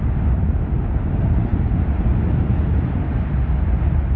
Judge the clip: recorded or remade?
recorded